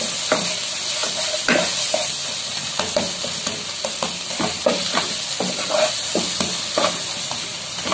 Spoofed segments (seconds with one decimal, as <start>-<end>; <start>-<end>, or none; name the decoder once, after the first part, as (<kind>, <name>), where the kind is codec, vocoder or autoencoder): none